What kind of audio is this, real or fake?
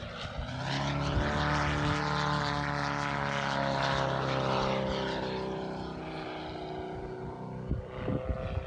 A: real